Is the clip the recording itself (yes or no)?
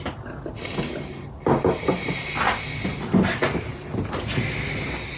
yes